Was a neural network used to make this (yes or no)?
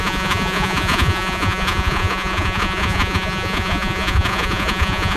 yes